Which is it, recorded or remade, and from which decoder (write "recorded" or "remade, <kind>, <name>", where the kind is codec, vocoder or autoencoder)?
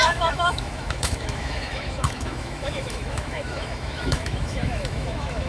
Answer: remade, autoencoder, DAC-VAE